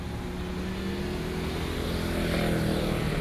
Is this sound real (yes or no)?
yes